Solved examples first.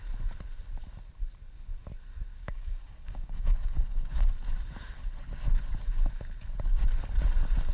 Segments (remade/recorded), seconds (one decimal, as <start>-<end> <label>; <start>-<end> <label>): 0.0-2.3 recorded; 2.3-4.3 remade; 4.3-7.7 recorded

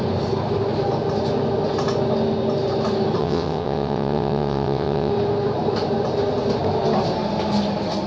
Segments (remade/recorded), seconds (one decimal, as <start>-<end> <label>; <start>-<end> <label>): 0.0-3.2 recorded; 3.2-5.1 remade; 5.1-8.1 recorded

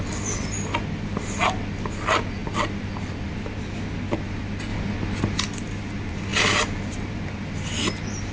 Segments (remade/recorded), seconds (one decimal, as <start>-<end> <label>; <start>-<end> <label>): 0.0-8.3 recorded

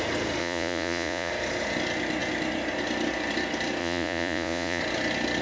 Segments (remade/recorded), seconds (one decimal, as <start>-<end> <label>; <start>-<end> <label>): 0.0-0.4 recorded; 0.4-1.3 remade; 1.3-3.8 recorded; 3.8-4.8 remade; 4.8-5.4 recorded

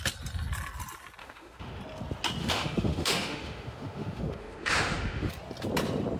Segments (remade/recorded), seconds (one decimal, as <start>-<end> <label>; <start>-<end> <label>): 0.0-1.2 recorded; 1.2-1.8 remade; 1.8-2.4 recorded; 2.4-5.3 remade; 5.3-6.2 recorded

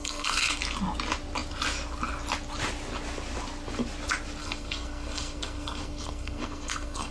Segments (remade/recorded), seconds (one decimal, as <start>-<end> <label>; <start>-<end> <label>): 0.0-0.6 remade; 0.6-4.4 recorded; 4.4-7.1 remade

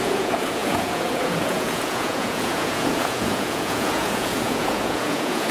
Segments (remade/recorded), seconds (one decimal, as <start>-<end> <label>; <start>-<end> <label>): 0.0-5.5 remade